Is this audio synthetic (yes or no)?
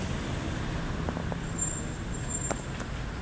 no